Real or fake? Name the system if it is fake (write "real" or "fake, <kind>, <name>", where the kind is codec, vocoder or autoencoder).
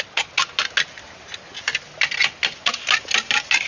real